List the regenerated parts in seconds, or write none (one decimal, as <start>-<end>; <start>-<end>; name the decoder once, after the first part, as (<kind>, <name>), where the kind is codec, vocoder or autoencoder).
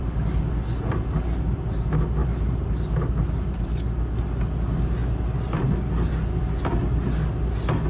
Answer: none